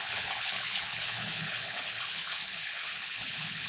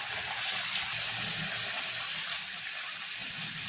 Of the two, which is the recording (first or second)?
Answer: second